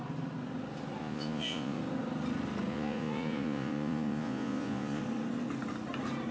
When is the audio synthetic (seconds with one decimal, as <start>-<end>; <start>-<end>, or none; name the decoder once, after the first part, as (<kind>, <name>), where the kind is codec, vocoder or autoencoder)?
1.0-1.8 (vocoder, Vocos); 2.7-5.0